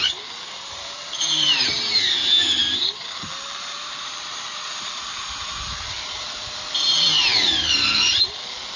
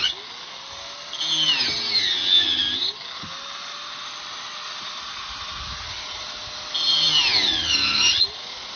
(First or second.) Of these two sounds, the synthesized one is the first